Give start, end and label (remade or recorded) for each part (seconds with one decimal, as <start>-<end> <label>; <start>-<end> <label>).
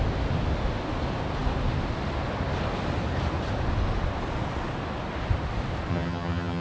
0.0-5.9 recorded; 5.9-6.6 remade